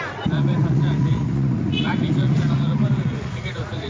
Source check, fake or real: fake